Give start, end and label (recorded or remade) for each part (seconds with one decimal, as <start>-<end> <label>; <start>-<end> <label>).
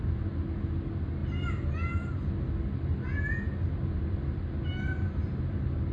0.0-5.9 recorded